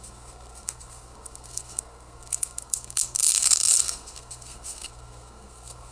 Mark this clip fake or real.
fake